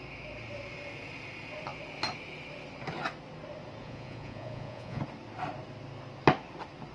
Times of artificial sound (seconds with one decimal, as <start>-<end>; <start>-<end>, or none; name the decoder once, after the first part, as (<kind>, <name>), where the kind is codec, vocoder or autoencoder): 3.8-5.0 (vocoder, Vocos)